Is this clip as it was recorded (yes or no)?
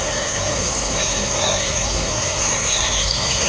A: no